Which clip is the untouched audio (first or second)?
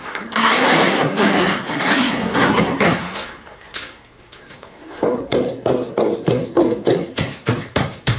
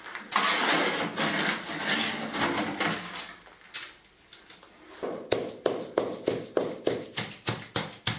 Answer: second